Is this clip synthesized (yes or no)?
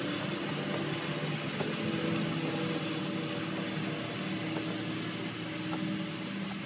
no